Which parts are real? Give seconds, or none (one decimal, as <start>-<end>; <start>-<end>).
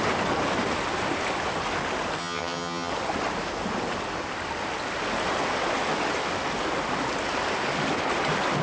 0.0-2.2; 2.9-8.6